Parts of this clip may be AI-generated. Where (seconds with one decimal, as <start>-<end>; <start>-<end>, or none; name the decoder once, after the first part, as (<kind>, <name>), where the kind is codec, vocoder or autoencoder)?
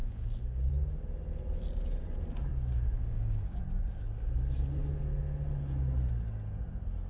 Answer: 0.0-0.7 (codec, DAC); 2.5-3.6